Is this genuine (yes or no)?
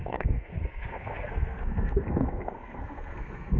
no